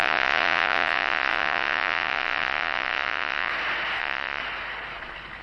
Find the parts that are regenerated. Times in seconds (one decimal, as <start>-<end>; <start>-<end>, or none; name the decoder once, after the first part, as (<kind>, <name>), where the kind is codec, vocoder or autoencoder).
0.0-3.5 (vocoder, Vocos); 4.0-4.4